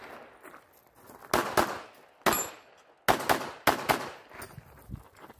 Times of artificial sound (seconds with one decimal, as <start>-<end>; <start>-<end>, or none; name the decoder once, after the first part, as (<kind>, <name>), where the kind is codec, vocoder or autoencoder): none